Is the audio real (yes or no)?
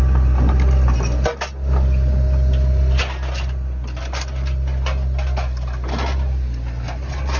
yes